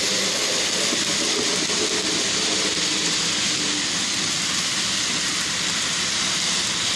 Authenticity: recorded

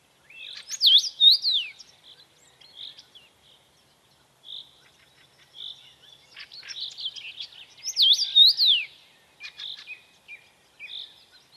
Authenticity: recorded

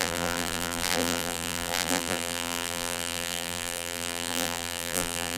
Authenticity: remade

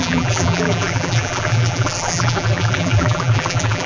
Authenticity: remade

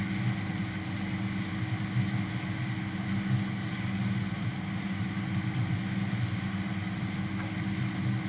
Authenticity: recorded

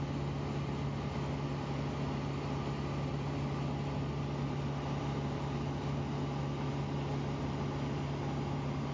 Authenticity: recorded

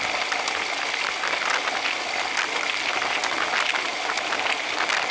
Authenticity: recorded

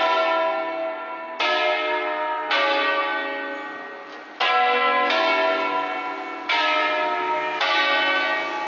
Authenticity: recorded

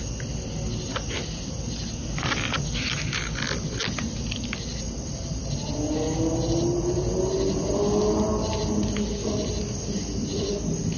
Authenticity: recorded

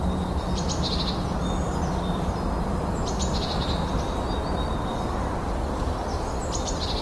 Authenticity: recorded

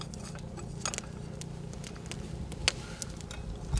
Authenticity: recorded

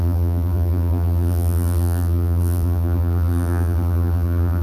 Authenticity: remade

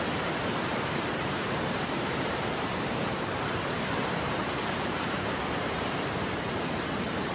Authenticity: remade